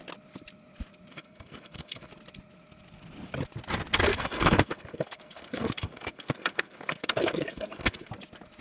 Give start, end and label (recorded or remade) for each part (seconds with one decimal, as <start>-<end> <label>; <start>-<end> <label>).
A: 0.0-1.1 recorded; 1.1-2.1 remade; 2.1-4.1 recorded; 4.1-8.1 remade; 8.1-8.6 recorded